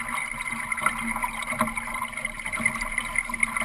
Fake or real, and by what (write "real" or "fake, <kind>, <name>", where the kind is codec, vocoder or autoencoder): real